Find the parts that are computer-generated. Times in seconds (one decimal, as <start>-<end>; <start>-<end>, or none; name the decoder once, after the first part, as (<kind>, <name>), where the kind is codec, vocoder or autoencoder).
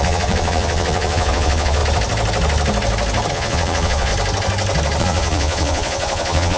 0.0-1.8 (vocoder, Vocos); 3.3-4.1; 5.0-6.6